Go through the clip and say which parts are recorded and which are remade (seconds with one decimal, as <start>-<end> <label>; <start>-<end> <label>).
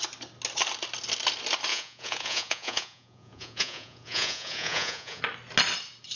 0.0-1.7 recorded; 1.7-5.2 remade; 5.2-6.2 recorded